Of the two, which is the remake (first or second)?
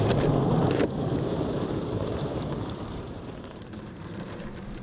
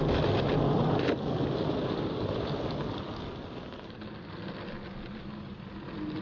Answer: first